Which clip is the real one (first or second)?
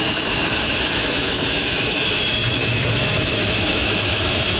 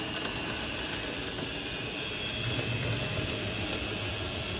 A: second